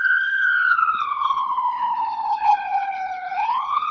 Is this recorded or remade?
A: remade